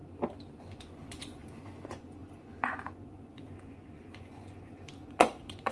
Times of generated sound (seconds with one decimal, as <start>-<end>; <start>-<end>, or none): 0.6-5.7